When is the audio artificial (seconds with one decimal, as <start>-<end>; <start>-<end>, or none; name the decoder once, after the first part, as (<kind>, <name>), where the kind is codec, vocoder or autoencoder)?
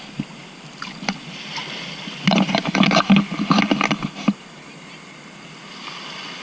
none